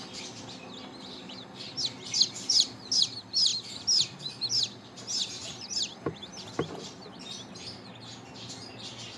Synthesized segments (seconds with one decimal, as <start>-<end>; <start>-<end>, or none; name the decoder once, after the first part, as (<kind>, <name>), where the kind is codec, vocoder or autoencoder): none